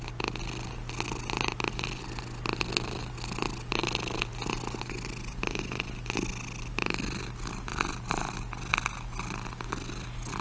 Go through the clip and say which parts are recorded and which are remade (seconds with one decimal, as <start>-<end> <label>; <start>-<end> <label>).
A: 0.0-7.7 recorded; 7.7-8.4 remade; 8.4-10.4 recorded